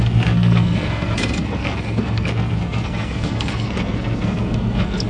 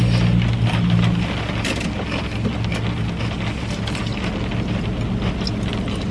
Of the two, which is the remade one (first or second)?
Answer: first